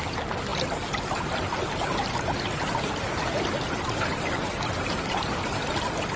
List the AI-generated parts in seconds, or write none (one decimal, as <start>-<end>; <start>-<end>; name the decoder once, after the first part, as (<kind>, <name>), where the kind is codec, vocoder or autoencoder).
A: none